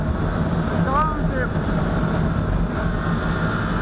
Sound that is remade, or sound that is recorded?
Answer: recorded